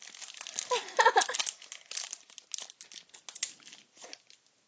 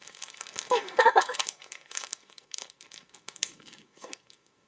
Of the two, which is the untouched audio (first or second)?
first